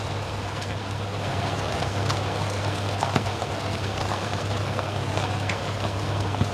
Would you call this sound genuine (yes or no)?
no